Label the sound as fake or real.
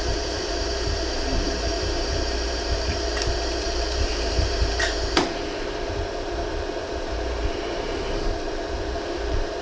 fake